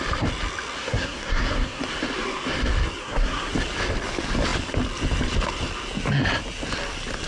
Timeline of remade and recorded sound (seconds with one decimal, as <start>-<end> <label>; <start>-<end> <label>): 0.0-0.8 recorded; 0.8-1.8 remade; 1.8-3.0 recorded; 3.0-3.5 remade; 3.5-7.3 recorded